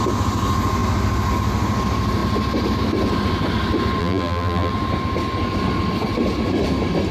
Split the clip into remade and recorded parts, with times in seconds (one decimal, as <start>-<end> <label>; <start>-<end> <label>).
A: 0.0-4.0 recorded; 4.0-4.7 remade; 4.7-7.1 recorded